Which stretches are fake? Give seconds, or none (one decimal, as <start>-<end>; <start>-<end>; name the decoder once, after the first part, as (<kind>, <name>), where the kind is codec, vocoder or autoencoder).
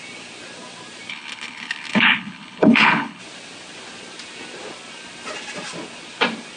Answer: 1.1-3.2 (codec, HILCodec)